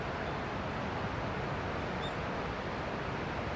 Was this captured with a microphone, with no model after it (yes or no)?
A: yes